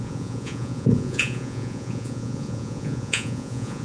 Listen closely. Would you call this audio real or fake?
fake